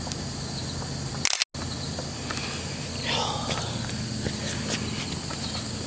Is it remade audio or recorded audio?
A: recorded